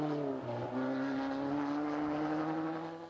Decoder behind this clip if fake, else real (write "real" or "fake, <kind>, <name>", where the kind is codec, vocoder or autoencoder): real